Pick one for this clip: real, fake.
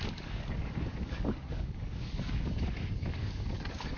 fake